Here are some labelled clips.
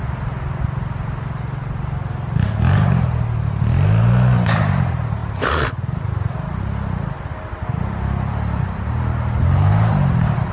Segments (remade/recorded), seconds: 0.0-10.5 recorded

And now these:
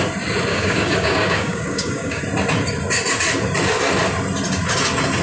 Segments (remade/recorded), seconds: 0.0-0.5 recorded; 0.5-2.2 remade; 2.2-5.2 recorded

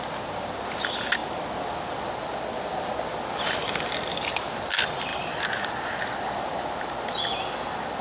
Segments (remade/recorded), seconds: 0.0-8.0 recorded

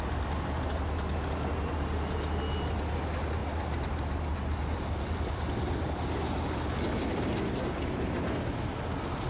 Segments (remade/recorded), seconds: 0.0-9.3 recorded

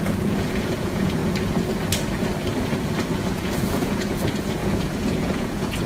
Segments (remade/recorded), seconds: 0.0-1.2 remade; 1.2-3.3 recorded; 3.3-5.9 remade

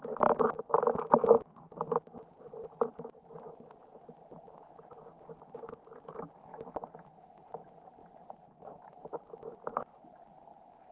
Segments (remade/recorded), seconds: 0.0-10.9 recorded